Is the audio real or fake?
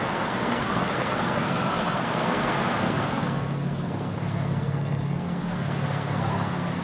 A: fake